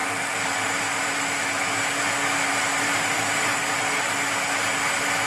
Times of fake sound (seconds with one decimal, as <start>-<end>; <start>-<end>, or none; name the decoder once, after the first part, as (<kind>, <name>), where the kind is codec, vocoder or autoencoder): 0.0-1.1 (vocoder, BigVGAN v2); 2.7-3.8